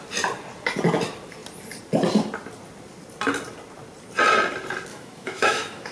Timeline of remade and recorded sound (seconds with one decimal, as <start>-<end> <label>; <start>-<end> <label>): 0.0-4.9 recorded; 4.9-5.9 remade